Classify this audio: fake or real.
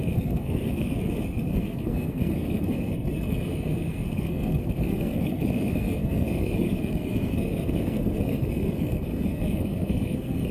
fake